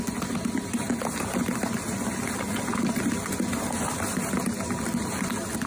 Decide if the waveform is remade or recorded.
recorded